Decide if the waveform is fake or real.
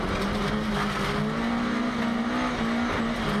real